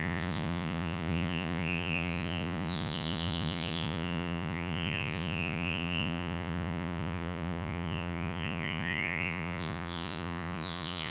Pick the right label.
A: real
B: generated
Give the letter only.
B